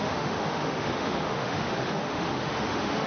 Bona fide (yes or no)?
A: no